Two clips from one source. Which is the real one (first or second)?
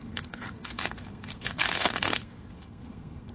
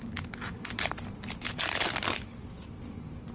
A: second